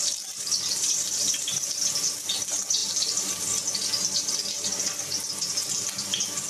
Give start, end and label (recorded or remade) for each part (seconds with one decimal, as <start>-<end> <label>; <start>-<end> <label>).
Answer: 0.0-6.5 recorded